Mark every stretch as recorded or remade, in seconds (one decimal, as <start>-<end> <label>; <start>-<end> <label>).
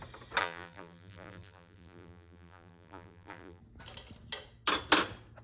0.0-0.4 recorded; 0.4-3.6 remade; 3.6-5.4 recorded